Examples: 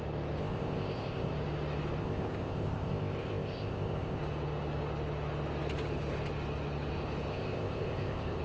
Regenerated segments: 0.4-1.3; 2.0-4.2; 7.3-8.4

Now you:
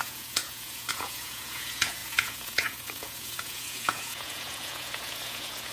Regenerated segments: 0.0-5.7

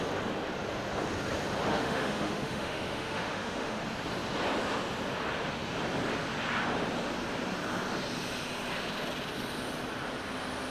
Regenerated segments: 1.7-3.8

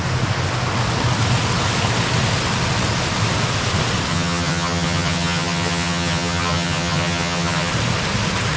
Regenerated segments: 4.1-7.7

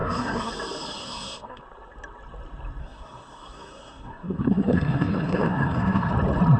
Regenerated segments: 0.0-0.5; 1.0-1.6; 2.8-6.1

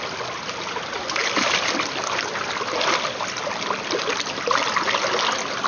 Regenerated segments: none